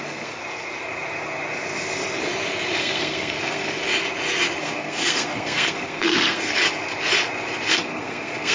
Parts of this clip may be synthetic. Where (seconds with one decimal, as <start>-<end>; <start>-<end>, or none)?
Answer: 0.0-0.4; 2.8-3.9; 4.6-6.6; 7.7-8.5